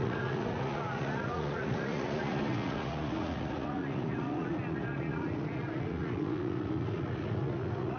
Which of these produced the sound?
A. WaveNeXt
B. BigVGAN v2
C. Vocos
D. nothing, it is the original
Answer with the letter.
C